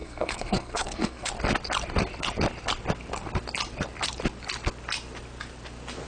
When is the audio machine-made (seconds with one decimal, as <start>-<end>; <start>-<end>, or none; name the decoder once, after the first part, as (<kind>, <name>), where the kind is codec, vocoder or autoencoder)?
0.0-1.3 (codec, SNAC)